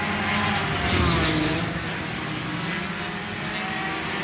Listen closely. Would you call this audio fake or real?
real